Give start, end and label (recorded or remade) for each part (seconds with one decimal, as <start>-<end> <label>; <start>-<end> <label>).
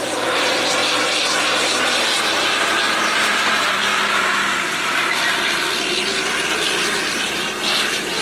0.0-0.8 remade; 0.8-1.4 recorded; 1.4-3.9 remade; 3.9-7.0 recorded; 7.0-8.2 remade